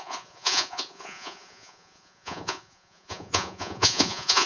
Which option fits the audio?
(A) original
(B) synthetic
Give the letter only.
B